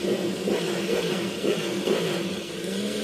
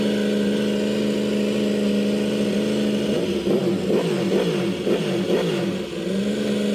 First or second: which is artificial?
first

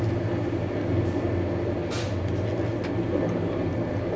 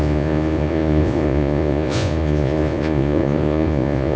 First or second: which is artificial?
second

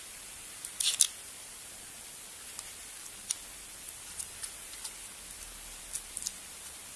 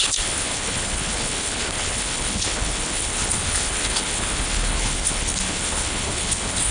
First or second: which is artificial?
second